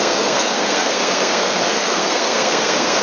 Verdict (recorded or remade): remade